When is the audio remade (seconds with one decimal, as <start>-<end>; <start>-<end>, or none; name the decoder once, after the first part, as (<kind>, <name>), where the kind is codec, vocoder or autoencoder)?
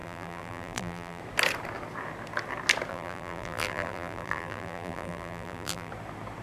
0.0-1.2 (vocoder, BigVGAN v2); 2.9-5.9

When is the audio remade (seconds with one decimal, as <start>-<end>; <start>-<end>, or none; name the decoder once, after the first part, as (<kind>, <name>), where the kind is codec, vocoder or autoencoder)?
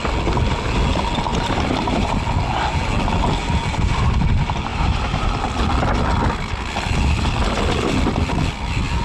1.3-2.0 (vocoder, BigVGAN v2); 4.7-5.3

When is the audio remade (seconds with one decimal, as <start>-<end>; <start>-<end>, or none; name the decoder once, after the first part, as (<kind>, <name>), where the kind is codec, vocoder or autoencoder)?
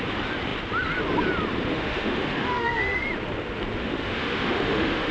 1.7-3.1 (autoencoder, DAC-VAE); 3.8-5.1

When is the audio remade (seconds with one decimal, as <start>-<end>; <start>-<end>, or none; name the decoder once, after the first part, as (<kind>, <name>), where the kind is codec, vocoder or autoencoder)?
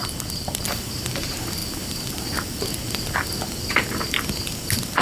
0.0-0.9 (vocoder, BigVGAN v2); 1.6-2.6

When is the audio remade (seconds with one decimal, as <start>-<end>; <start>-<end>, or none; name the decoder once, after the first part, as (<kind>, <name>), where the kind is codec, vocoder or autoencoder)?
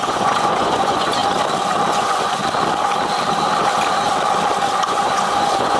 0.0-1.2 (vocoder, Vocos); 1.9-2.4; 4.8-5.8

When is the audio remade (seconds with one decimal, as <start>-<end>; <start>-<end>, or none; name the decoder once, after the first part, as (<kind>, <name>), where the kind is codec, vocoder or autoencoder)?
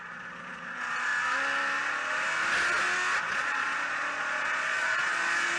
0.0-1.1 (vocoder, Vocos); 3.3-5.6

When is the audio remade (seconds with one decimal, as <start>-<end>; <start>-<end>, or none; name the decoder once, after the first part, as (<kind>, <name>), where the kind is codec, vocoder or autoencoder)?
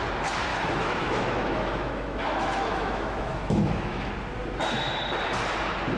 0.5-4.1 (autoencoder, DAC-VAE)